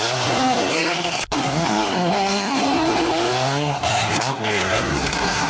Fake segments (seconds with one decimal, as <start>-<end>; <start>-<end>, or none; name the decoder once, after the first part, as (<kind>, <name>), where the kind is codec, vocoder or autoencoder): 0.0-5.5 (codec, SNAC)